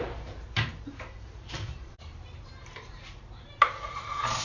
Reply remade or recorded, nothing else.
remade